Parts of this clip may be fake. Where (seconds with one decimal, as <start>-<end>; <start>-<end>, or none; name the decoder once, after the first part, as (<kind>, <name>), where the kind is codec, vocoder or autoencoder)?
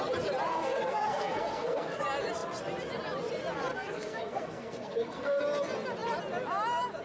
0.5-2.0 (codec, SNAC); 3.7-5.4